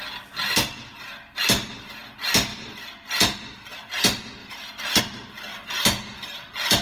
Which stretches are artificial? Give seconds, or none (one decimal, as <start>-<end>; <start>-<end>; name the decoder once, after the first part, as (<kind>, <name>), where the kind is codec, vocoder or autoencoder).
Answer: 2.5-3.9 (vocoder, BigVGAN v2); 4.4-5.0

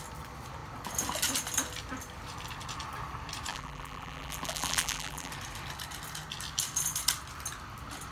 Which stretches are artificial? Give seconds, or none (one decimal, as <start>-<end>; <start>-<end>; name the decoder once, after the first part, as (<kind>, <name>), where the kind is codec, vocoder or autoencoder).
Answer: 3.5-5.3 (vocoder, BigVGAN v2)

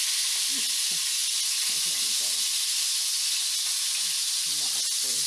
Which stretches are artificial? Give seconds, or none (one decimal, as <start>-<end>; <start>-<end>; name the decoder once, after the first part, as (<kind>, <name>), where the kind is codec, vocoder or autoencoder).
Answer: none

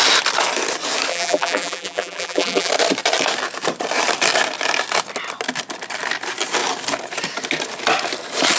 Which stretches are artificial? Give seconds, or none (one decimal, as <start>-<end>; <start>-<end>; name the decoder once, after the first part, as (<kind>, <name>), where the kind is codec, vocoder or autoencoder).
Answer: 1.1-2.7 (vocoder, BigVGAN v2)

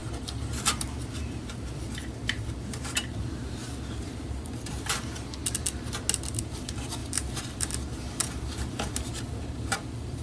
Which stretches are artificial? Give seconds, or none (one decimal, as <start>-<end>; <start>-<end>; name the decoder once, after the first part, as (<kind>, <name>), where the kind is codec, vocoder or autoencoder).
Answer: 1.2-5.4 (vocoder, BigVGAN v2); 6.4-10.2